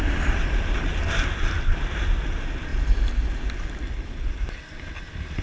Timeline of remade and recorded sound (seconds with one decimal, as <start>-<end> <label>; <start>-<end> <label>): 0.0-5.4 recorded